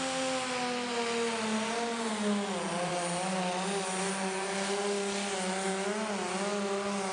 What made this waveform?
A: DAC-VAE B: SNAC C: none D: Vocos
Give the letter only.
C